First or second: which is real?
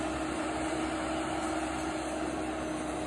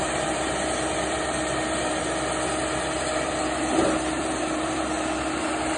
first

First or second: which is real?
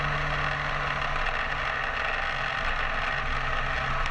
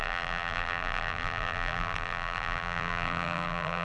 first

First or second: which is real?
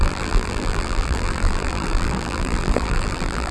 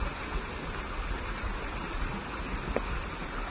second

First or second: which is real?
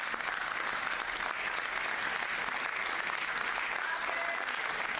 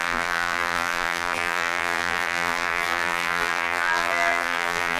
first